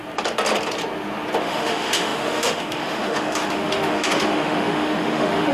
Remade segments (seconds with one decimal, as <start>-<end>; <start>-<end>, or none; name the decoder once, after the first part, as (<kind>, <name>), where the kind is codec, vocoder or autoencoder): 1.4-5.5 (autoencoder, DAC-VAE)